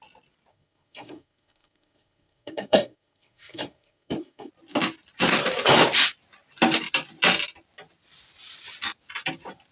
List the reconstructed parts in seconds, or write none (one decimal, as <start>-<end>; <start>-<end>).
0.5-4.5